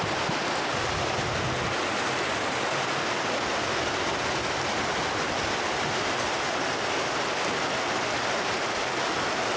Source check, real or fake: real